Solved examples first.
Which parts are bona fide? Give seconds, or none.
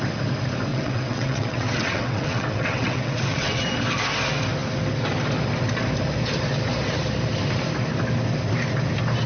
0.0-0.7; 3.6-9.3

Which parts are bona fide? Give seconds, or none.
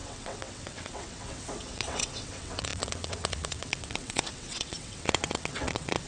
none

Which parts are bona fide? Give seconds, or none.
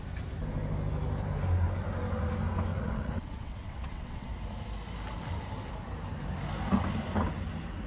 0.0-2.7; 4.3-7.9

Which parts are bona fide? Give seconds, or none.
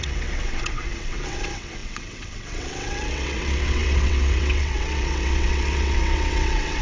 none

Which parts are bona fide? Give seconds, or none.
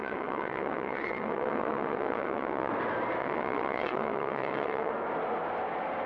2.7-3.2; 4.9-6.1